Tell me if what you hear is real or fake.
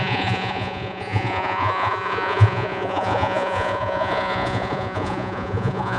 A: fake